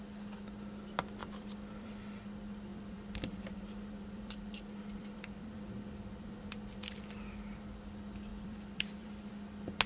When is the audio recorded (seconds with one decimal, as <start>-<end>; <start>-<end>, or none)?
0.0-1.2; 1.9-2.7; 7.6-8.3; 9.3-9.9